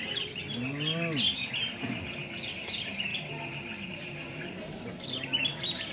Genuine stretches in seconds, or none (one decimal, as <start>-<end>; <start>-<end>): 0.4-1.8; 3.1-3.9